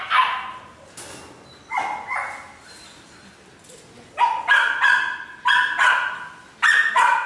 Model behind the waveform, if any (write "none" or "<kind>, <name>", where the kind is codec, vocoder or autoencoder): none